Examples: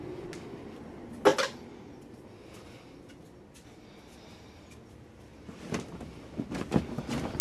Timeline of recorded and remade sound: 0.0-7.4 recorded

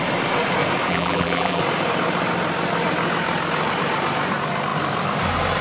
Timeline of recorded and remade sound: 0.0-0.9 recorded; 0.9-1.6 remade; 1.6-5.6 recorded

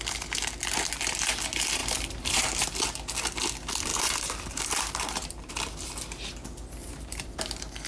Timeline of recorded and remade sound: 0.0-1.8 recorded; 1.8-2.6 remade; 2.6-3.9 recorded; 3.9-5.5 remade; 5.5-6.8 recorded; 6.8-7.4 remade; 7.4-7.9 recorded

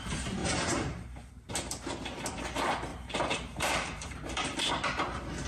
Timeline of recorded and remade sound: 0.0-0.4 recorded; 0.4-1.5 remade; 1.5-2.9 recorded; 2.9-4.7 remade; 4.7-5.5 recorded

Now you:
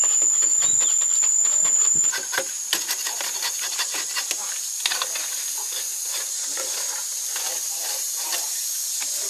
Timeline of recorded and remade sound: 0.0-0.4 recorded; 0.4-4.6 remade; 4.6-5.9 recorded; 5.9-6.7 remade; 6.7-8.0 recorded; 8.0-8.6 remade; 8.6-9.3 recorded

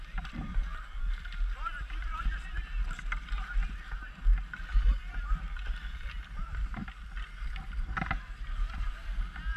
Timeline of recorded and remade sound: 0.0-9.6 recorded

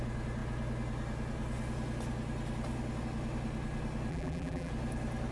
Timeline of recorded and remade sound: 0.0-4.1 recorded; 4.1-4.7 remade; 4.7-5.3 recorded

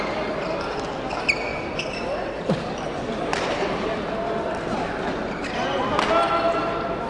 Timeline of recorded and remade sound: 0.0-1.5 recorded; 1.5-4.9 remade; 4.9-7.1 recorded